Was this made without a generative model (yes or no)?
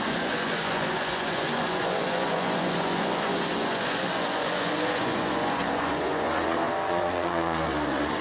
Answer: no